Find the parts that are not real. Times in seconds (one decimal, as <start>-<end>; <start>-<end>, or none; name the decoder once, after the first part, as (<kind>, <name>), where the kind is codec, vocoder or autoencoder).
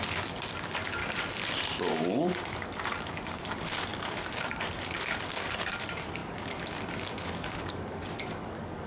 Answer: 0.0-1.0 (codec, DAC); 1.9-8.9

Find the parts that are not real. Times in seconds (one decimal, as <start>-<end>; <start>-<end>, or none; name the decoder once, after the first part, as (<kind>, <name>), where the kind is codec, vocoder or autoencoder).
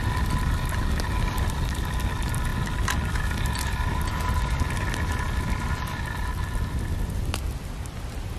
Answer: none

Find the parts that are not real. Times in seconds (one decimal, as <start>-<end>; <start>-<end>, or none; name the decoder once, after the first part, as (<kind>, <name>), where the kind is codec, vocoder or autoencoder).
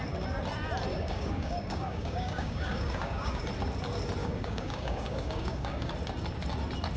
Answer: 0.9-3.4 (codec, DAC); 4.2-5.9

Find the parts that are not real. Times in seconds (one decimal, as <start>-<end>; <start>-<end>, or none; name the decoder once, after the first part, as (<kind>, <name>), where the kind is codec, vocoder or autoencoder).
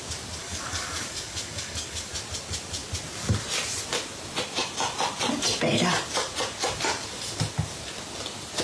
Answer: 0.4-2.1 (codec, DAC)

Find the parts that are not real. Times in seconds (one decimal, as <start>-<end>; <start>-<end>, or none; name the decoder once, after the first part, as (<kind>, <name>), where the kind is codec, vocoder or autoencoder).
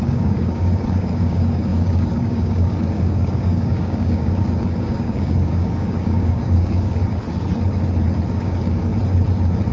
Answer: 0.0-7.0 (codec, DAC); 8.3-8.9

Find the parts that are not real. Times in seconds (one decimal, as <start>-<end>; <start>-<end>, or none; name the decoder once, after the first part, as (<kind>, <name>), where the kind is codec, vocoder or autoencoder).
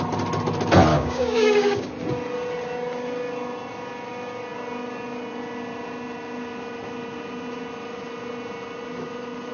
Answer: 0.9-1.9 (codec, DAC)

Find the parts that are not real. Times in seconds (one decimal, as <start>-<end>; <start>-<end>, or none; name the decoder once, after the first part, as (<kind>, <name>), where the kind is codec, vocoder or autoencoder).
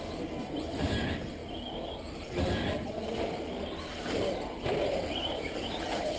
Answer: none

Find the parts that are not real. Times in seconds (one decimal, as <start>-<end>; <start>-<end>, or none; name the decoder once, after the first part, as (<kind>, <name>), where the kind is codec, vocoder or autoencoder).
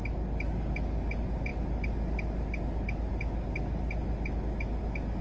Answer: none